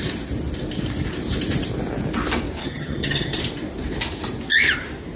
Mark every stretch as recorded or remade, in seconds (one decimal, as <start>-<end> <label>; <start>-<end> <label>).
0.0-2.6 recorded; 2.6-3.4 remade; 3.4-5.2 recorded